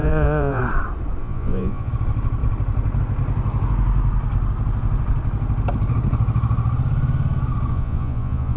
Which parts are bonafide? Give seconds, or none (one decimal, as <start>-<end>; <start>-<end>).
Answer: 0.6-1.2; 1.9-7.7